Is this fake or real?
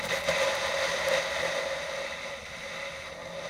real